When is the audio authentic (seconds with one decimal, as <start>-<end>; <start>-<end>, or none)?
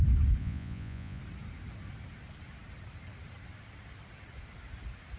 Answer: 0.0-0.4; 1.2-5.2